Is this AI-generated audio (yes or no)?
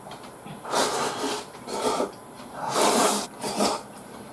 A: yes